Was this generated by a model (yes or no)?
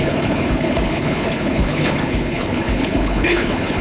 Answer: yes